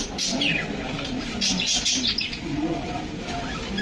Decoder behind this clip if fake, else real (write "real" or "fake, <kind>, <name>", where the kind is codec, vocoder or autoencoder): real